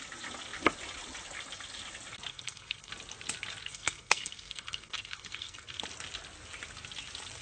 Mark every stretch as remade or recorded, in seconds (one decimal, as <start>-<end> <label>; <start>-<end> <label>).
0.0-2.3 recorded; 2.3-2.9 remade; 2.9-3.6 recorded; 3.6-5.8 remade; 5.8-7.4 recorded